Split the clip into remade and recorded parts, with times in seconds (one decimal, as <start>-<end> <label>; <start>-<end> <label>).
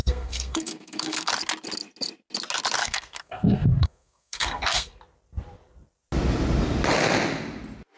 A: 0.0-1.3 remade; 1.3-2.8 recorded; 2.8-5.0 remade; 5.0-8.0 recorded